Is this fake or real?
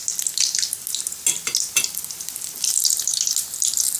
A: real